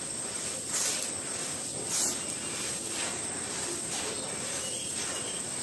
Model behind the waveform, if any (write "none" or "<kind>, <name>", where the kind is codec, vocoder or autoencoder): none